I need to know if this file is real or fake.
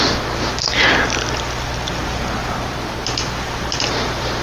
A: real